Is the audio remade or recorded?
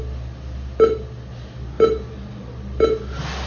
recorded